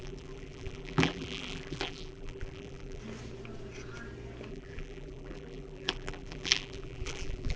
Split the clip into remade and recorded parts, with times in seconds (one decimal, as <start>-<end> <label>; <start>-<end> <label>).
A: 0.0-3.0 remade; 3.0-4.5 recorded; 4.5-7.6 remade